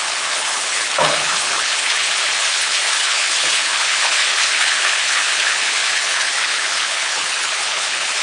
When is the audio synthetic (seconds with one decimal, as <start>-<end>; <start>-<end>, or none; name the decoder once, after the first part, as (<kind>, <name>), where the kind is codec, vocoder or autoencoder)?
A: 0.0-8.2 (codec, HILCodec)

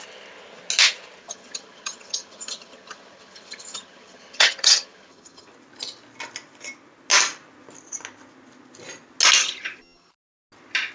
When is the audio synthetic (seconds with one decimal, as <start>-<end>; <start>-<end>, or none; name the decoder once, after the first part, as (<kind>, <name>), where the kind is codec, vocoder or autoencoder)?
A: 1.2-5.5 (vocoder, HiFi-GAN); 9.4-10.1

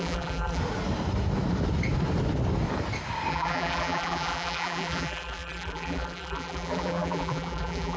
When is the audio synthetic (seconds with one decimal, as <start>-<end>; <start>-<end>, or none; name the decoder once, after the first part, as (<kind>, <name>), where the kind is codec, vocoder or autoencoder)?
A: 0.0-0.6 (vocoder, BigVGAN v2); 3.3-8.0

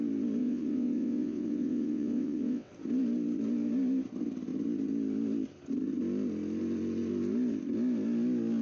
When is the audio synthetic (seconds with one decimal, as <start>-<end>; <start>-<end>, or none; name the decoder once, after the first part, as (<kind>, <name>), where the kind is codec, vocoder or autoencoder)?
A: 0.4-2.7 (vocoder, WaveNeXt)